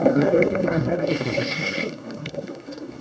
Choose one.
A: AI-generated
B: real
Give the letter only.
A